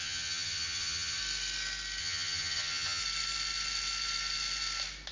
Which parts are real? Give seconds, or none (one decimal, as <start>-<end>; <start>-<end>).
1.2-2.0; 3.0-5.1